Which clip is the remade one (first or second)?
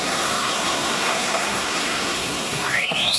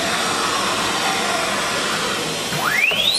first